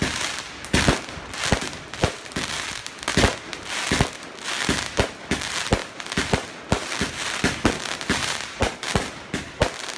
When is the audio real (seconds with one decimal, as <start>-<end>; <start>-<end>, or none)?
0.0-8.2; 8.9-10.0